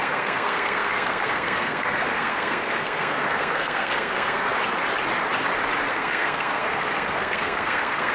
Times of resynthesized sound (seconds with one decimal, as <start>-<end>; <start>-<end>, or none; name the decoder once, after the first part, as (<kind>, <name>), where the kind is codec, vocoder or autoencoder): 0.0-4.5 (codec, SNAC); 5.9-8.1